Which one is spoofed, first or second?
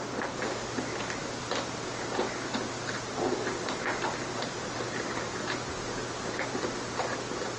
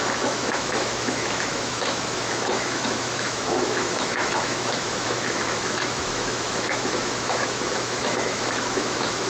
second